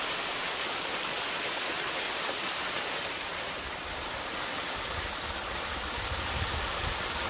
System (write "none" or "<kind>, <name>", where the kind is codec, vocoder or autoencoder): none